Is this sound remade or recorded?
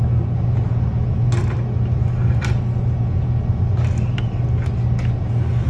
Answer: recorded